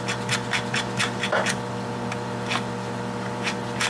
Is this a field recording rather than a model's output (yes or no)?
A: yes